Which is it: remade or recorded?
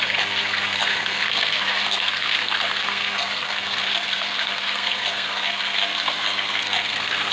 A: remade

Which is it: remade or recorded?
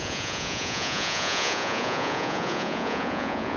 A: remade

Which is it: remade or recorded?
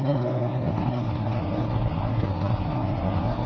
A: remade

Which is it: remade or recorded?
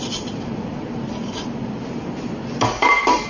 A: recorded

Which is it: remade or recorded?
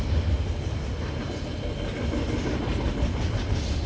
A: recorded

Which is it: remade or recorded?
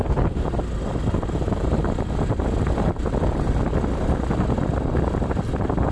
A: recorded